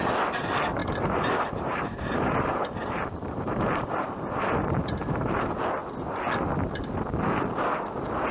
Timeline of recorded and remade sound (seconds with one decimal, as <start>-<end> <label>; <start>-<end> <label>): 0.0-0.8 recorded; 0.8-5.5 remade; 5.5-8.3 recorded